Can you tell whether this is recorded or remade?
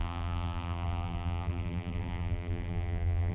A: remade